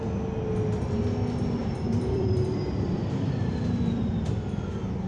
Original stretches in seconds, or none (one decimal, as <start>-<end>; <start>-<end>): 0.0-1.6; 4.1-5.1